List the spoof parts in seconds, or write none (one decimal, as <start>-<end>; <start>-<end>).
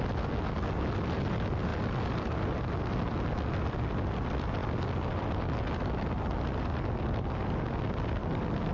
none